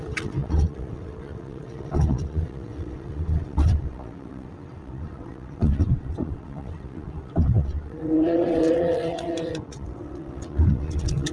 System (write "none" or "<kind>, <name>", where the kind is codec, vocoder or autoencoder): vocoder, WaveNeXt